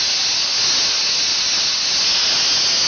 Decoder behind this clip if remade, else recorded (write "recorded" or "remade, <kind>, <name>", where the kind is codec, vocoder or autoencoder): recorded